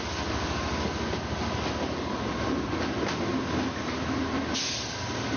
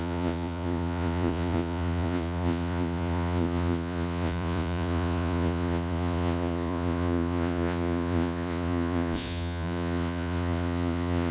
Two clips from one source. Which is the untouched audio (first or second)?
first